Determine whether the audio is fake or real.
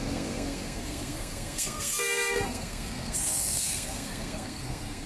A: fake